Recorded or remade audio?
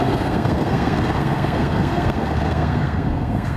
remade